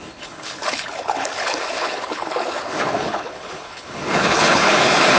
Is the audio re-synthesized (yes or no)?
yes